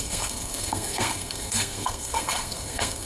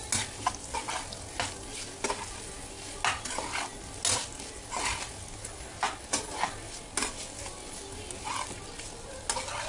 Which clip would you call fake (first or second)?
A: first